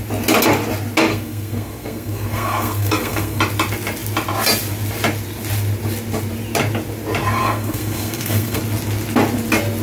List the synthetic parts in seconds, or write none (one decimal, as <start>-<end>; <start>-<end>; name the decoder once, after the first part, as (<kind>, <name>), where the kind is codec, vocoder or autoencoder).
1.1-3.4 (codec, SNAC); 7.4-8.6